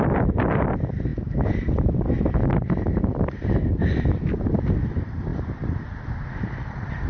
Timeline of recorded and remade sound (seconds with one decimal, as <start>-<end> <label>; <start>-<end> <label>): 0.0-1.1 remade; 1.1-4.6 recorded; 4.6-5.3 remade; 5.3-5.8 recorded; 5.8-7.1 remade